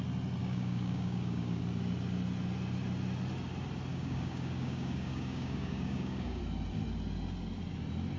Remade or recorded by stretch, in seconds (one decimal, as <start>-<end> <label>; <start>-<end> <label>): 0.0-0.4 recorded; 0.4-1.6 remade; 1.6-3.9 recorded; 3.9-6.4 remade; 6.4-8.2 recorded